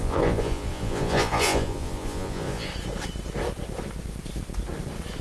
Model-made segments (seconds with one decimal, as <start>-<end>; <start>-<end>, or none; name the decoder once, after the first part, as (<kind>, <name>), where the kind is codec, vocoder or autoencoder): 0.0-2.7 (vocoder, Vocos)